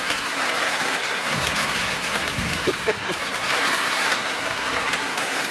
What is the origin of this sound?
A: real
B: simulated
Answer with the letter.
B